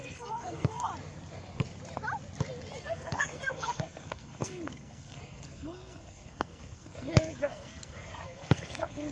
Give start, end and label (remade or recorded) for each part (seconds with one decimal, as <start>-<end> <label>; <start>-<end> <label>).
0.0-0.9 remade; 0.9-2.8 recorded; 2.8-9.1 remade